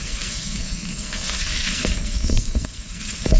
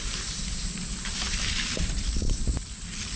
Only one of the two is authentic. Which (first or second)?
second